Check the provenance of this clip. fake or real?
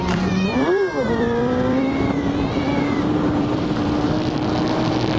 fake